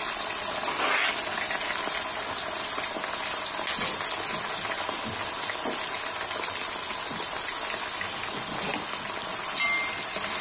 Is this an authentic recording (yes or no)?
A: yes